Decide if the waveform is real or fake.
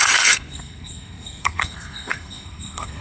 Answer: fake